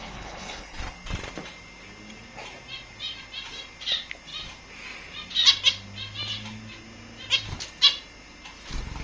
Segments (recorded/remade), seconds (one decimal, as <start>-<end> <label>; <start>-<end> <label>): 0.0-0.8 remade; 0.8-9.0 recorded